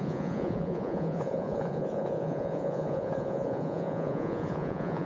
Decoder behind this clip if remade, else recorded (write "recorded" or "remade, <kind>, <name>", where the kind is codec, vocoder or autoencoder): remade, vocoder, Vocos